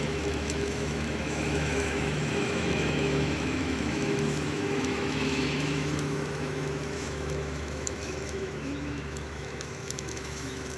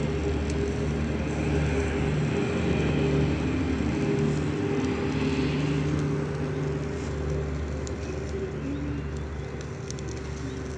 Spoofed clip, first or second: first